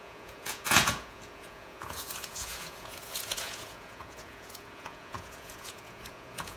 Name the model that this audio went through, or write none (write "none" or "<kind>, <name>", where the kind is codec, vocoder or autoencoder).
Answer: vocoder, Vocos